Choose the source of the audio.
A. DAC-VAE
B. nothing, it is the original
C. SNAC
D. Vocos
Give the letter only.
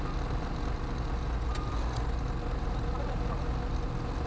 B